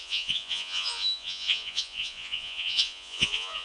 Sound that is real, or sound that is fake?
fake